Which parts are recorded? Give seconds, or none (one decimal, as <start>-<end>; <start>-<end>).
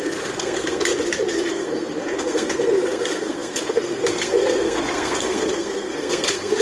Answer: 0.9-1.5